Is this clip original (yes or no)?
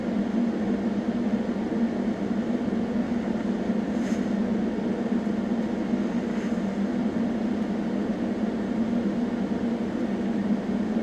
yes